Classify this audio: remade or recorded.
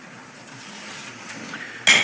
recorded